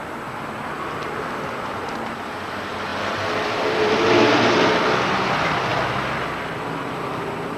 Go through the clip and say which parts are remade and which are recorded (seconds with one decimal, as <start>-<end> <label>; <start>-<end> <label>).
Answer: 0.0-7.6 recorded